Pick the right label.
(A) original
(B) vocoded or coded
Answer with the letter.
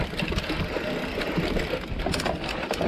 A